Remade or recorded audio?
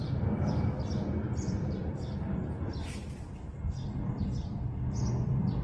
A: recorded